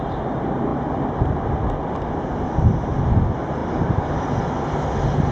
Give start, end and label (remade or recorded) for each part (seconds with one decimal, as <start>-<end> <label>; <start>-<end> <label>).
0.0-5.3 recorded